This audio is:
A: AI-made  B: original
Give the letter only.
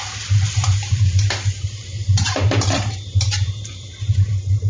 A